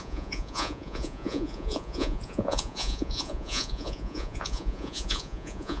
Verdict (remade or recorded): remade